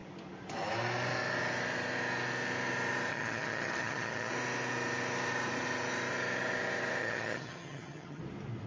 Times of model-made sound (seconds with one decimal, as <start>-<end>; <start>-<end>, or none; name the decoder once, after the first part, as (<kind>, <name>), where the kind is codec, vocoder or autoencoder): 3.1-4.3 (vocoder, HiFi-GAN); 7.0-8.2